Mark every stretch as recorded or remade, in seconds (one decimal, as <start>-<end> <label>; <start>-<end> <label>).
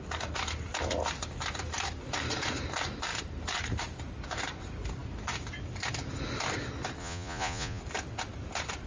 0.0-7.0 recorded; 7.0-7.8 remade; 7.8-8.9 recorded